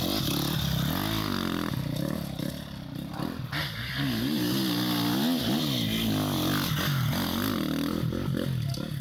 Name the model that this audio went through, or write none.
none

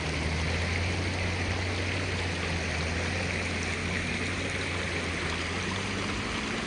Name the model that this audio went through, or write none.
none